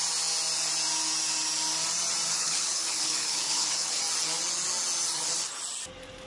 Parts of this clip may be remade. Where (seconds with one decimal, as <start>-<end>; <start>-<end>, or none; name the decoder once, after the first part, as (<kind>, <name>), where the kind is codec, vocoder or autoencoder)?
2.3-4.0 (codec, HILCodec)